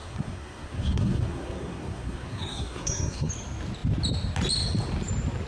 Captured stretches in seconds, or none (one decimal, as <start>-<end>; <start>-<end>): 3.3-5.5